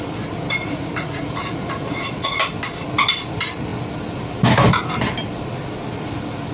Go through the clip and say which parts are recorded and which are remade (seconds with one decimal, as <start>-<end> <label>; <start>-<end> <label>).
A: 0.0-0.6 recorded; 0.6-2.4 remade; 2.4-6.5 recorded